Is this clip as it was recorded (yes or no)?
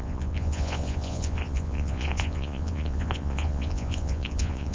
no